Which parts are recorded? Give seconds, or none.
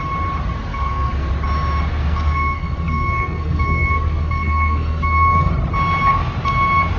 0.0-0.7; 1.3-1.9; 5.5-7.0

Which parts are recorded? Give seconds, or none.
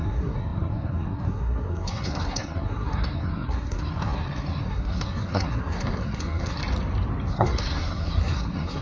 6.6-7.3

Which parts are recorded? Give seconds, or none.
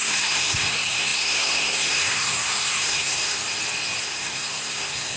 3.4-4.0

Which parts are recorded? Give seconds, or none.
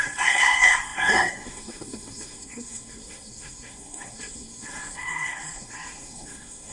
none